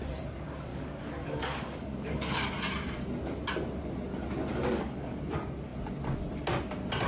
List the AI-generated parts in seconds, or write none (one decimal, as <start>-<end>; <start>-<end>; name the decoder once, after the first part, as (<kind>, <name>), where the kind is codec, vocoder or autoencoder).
0.7-2.5 (codec, DAC); 4.5-5.2